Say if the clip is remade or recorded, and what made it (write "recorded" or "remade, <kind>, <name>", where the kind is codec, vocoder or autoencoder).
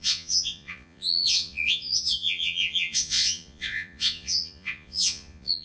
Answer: remade, vocoder, Vocos